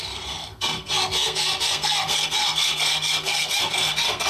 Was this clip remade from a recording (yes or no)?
yes